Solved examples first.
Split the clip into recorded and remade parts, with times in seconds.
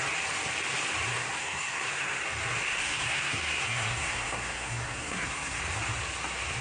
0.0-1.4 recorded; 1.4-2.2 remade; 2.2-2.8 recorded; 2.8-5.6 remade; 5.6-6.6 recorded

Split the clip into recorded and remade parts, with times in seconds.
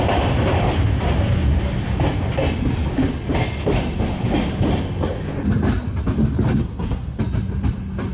0.0-6.6 recorded; 6.6-7.2 remade; 7.2-8.1 recorded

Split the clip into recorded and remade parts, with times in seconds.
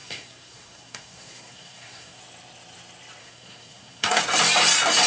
0.0-2.2 remade; 2.2-3.2 recorded; 3.2-4.2 remade; 4.2-5.1 recorded